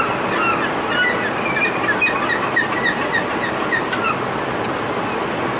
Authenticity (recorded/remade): recorded